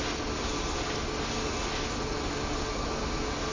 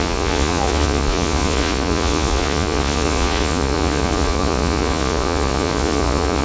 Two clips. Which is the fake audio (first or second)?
second